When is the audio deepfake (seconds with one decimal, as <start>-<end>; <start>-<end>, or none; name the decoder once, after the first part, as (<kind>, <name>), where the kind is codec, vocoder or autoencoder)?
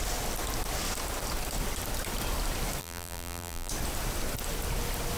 2.8-3.7 (vocoder, BigVGAN v2)